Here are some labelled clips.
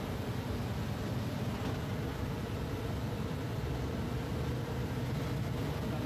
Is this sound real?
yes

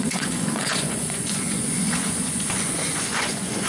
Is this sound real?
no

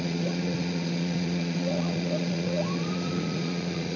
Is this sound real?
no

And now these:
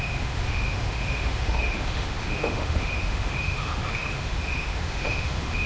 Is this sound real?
no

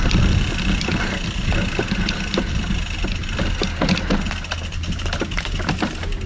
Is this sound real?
yes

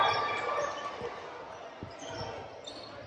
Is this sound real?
yes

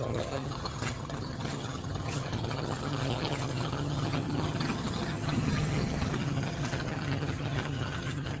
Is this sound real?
no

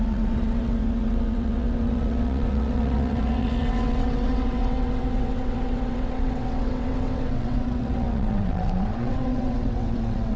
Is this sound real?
no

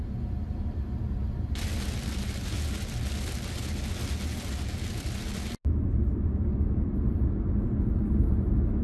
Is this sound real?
yes